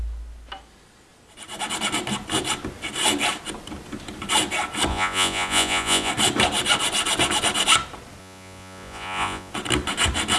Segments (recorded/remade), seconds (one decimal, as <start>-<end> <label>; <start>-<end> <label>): 0.0-4.9 recorded; 4.9-6.1 remade; 6.1-8.2 recorded; 8.2-9.5 remade; 9.5-10.4 recorded

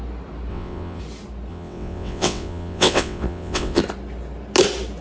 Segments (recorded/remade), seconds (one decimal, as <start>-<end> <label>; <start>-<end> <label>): 0.0-0.5 recorded; 0.5-1.0 remade; 1.0-1.5 recorded; 1.5-3.8 remade; 3.8-5.0 recorded

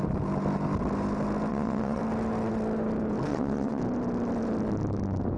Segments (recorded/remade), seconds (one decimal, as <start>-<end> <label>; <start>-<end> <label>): 0.0-1.5 recorded; 1.5-2.0 remade; 2.0-3.3 recorded; 3.3-3.8 remade; 3.8-5.4 recorded

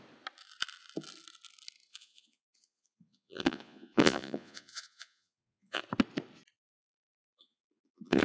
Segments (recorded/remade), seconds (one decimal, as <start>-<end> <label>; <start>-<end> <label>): 0.0-1.9 recorded; 1.9-5.8 remade; 5.8-7.2 recorded; 7.2-8.2 remade

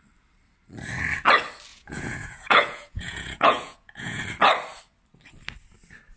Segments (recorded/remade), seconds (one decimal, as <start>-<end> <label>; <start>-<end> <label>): 0.0-1.7 recorded; 1.7-4.2 remade; 4.2-6.2 recorded

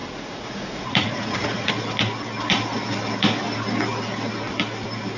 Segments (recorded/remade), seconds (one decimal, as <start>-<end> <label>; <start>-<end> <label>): 0.0-1.7 remade; 1.7-5.2 recorded

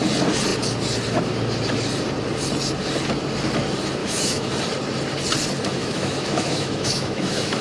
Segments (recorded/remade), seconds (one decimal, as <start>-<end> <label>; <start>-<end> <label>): 0.0-4.0 recorded; 4.0-4.5 remade; 4.5-5.8 recorded; 5.8-7.6 remade

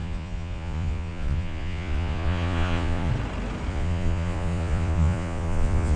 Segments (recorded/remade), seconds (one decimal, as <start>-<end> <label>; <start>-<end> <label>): 0.0-3.1 remade; 3.1-3.7 recorded; 3.7-6.0 remade